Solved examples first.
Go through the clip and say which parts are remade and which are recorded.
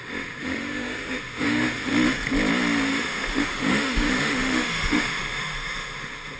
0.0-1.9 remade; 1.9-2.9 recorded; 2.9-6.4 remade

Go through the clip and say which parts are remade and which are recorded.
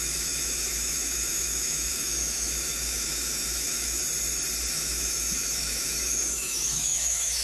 0.0-4.0 remade; 4.0-4.7 recorded; 4.7-7.4 remade